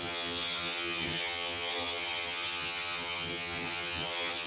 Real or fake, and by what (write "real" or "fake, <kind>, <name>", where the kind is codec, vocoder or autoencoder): fake, vocoder, HiFi-GAN